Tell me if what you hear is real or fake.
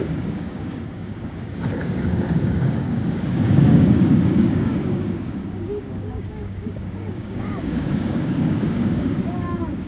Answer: fake